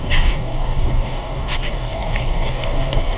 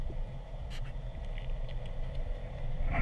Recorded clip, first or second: second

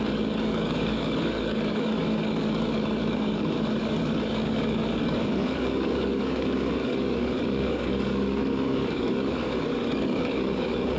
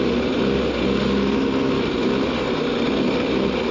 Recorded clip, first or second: second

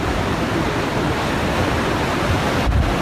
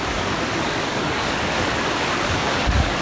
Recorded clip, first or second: first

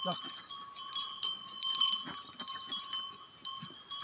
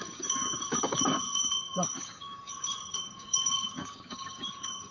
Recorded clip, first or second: first